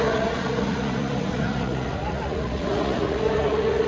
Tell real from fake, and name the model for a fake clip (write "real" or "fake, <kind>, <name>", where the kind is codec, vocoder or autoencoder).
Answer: fake, vocoder, Vocos